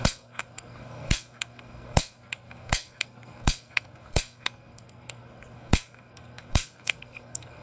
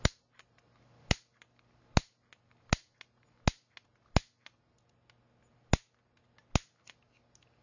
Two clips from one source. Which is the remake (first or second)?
first